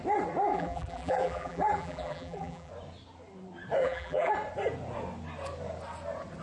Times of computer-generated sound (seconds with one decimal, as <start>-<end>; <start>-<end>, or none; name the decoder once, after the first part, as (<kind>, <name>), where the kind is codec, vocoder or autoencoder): 0.5-2.7 (vocoder, BigVGAN v2); 3.8-4.3